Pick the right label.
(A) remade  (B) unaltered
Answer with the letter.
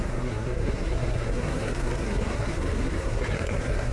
A